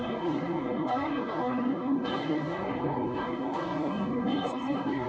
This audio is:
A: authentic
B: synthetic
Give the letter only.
B